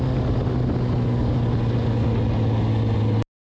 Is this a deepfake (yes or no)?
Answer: no